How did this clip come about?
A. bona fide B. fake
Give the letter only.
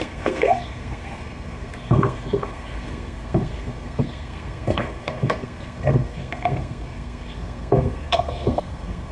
B